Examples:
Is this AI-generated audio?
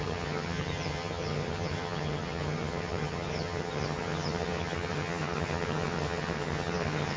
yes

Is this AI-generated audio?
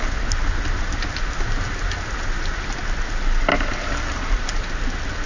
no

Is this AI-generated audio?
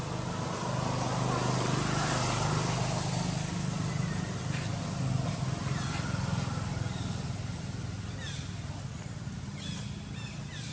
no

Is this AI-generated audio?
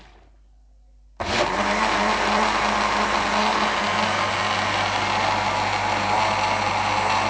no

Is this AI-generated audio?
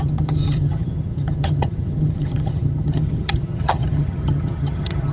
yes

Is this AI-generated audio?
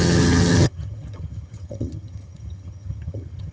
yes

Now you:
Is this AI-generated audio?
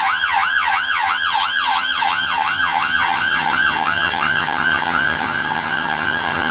yes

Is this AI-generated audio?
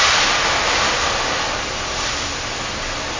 no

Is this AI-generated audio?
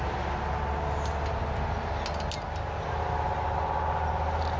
no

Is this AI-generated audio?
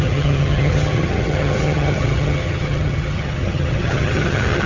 yes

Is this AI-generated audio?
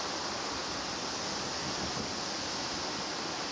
no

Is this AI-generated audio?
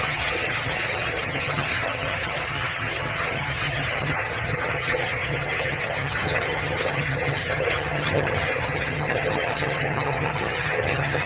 yes